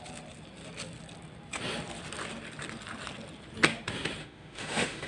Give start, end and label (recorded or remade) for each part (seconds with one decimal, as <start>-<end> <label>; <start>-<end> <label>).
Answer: 0.0-4.2 recorded; 4.2-5.1 remade